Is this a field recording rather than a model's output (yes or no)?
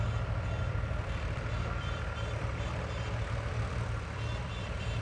no